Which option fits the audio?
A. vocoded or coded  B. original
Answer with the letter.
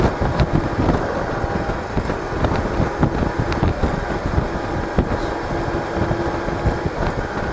B